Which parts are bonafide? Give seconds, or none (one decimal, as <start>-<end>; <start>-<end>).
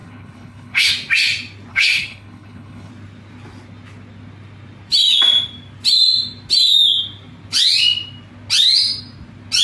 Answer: 0.9-1.7; 2.9-9.6